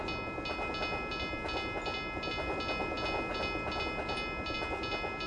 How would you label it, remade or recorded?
recorded